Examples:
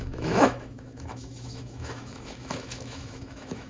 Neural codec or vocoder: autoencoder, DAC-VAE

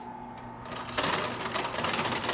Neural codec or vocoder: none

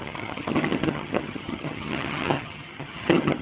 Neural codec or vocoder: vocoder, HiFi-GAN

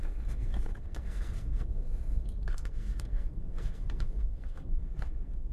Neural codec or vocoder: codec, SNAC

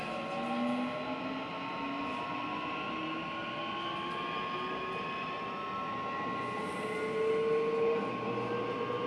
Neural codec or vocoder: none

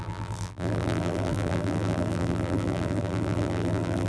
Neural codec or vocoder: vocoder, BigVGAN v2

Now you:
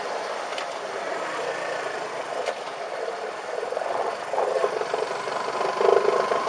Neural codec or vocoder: none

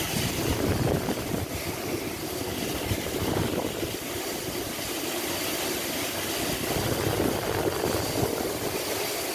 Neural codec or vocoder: none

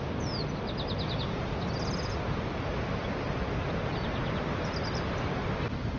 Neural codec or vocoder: none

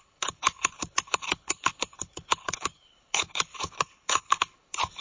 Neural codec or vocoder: codec, HILCodec